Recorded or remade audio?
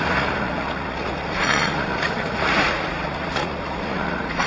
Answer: remade